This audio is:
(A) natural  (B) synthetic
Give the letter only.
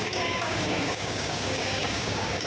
B